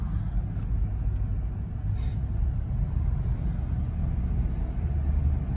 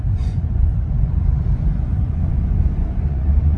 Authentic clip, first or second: first